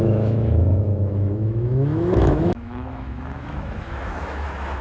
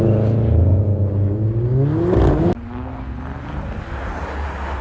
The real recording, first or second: second